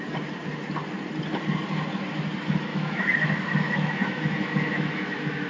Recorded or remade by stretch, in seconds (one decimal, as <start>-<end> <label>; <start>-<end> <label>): 0.0-2.7 recorded; 2.7-5.5 remade